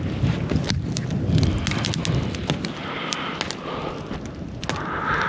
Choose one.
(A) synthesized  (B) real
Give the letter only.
B